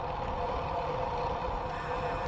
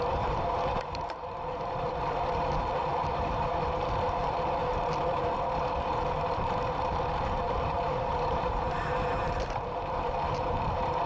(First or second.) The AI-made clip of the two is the second